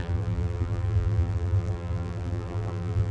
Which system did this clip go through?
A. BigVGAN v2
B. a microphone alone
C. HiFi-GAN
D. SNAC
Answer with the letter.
A